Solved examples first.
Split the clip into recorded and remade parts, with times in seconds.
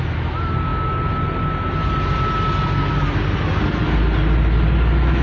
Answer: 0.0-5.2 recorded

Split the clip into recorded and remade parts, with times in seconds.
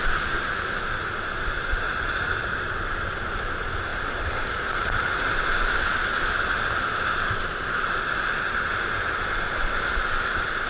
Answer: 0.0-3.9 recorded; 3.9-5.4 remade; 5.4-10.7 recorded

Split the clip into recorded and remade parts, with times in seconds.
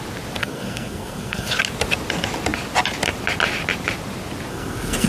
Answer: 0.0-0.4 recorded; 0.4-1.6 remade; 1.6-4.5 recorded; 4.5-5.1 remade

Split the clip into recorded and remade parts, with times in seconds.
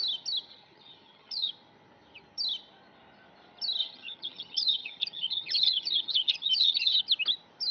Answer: 0.0-0.5 recorded; 0.5-1.5 remade; 1.5-3.8 recorded; 3.8-7.0 remade; 7.0-7.7 recorded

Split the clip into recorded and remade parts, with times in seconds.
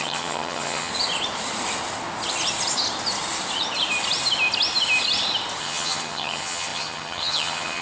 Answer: 0.0-0.9 remade; 0.9-5.6 recorded; 5.6-7.8 remade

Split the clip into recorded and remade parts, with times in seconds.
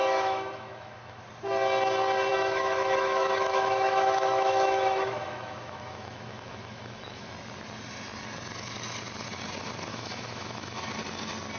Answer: 0.0-1.2 remade; 1.2-2.3 recorded; 2.3-7.3 remade; 7.3-9.9 recorded; 9.9-10.9 remade; 10.9-11.6 recorded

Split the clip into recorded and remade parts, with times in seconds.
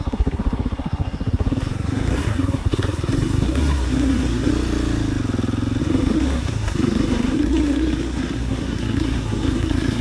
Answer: 0.0-4.5 remade; 4.5-5.8 recorded; 5.8-10.0 remade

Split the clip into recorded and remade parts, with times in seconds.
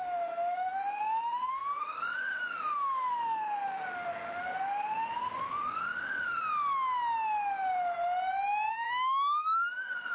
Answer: 0.0-6.4 remade; 6.4-8.7 recorded; 8.7-10.1 remade